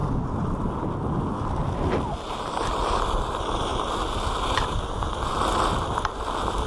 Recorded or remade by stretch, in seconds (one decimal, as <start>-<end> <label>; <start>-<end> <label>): 0.0-6.7 recorded